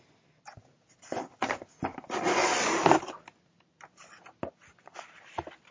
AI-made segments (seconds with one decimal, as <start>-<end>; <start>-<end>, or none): none